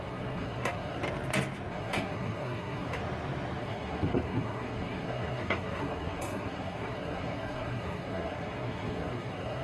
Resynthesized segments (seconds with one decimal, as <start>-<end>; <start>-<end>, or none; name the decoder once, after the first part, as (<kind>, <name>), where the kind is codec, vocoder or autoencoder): 0.0-1.0 (codec, SNAC); 1.7-3.0; 3.6-9.6

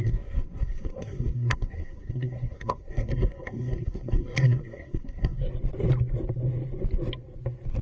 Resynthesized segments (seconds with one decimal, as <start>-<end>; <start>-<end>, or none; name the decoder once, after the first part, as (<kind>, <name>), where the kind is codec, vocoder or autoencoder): 0.0-5.4 (codec, SNAC)